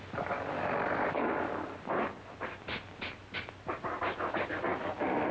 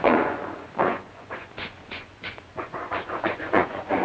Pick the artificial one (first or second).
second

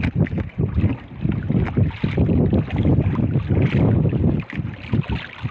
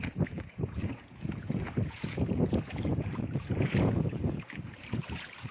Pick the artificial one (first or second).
second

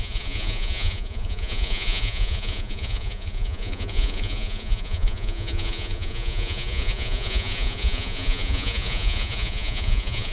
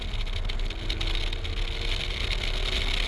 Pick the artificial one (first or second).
first